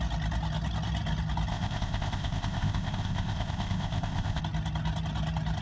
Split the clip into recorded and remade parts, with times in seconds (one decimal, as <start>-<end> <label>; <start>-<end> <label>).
0.0-1.5 recorded; 1.5-4.4 remade; 4.4-5.6 recorded